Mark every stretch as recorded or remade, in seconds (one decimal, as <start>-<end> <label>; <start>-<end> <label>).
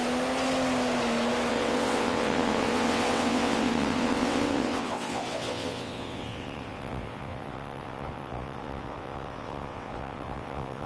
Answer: 0.0-1.5 recorded; 1.5-10.9 remade